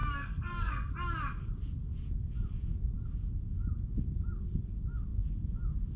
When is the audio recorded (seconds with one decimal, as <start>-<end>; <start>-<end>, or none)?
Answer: 0.9-6.0